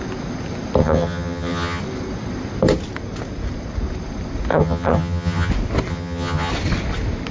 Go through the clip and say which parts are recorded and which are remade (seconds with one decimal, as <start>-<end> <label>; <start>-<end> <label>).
0.0-0.8 recorded; 0.8-1.8 remade; 1.8-4.5 recorded; 4.5-5.5 remade; 5.5-5.9 recorded; 5.9-6.5 remade; 6.5-7.3 recorded

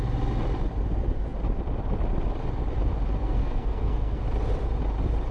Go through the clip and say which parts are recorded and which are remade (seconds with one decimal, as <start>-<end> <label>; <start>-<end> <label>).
0.0-3.2 recorded; 3.2-4.2 remade; 4.2-5.3 recorded

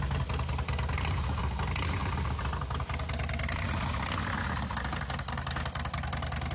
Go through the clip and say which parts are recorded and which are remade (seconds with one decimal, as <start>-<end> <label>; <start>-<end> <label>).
0.0-6.5 recorded

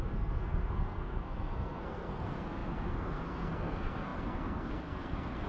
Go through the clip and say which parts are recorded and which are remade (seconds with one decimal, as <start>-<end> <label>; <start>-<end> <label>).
0.0-5.5 remade

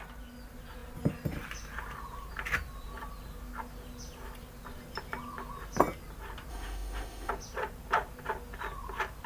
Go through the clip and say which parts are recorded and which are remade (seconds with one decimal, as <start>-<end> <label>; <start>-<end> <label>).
0.0-6.5 recorded; 6.5-7.3 remade; 7.3-9.3 recorded

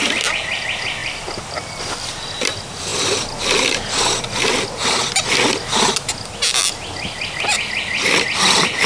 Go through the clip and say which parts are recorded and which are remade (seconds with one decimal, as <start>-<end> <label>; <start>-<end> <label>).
0.0-1.0 recorded; 1.0-1.8 remade; 1.8-8.9 recorded